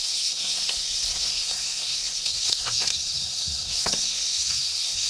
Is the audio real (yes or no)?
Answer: no